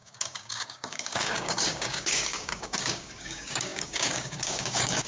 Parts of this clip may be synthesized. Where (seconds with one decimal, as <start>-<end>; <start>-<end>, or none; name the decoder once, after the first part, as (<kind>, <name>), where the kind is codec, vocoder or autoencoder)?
0.0-5.1 (codec, DAC)